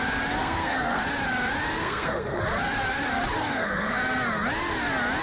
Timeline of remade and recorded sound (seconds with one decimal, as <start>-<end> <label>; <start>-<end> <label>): 0.0-0.4 recorded; 0.4-1.0 remade; 1.0-1.8 recorded; 1.8-2.4 remade; 2.4-3.4 recorded; 3.4-4.0 remade; 4.0-5.2 recorded